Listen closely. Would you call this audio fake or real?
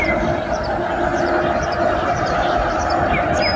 real